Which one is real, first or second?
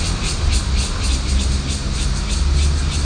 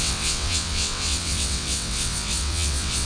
first